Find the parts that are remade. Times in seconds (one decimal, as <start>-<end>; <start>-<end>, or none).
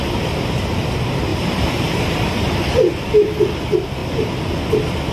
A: 1.3-3.4; 4.0-4.6